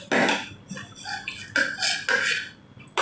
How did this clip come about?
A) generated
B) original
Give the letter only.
B